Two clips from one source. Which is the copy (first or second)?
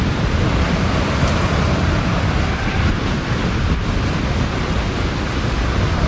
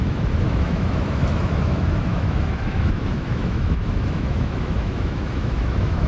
second